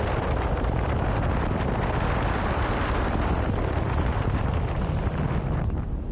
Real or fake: fake